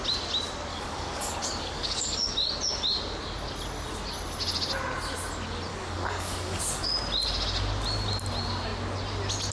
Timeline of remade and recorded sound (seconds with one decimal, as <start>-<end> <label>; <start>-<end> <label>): 0.0-0.7 recorded; 0.7-2.3 remade; 2.3-5.7 recorded; 5.7-6.6 remade; 6.6-9.5 recorded